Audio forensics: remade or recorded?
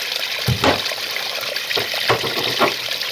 recorded